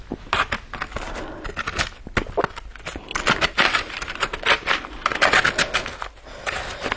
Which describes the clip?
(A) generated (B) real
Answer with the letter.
B